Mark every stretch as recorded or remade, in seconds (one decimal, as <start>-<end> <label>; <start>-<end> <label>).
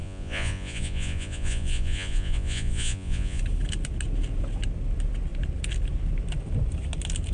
0.0-3.4 remade; 3.4-7.3 recorded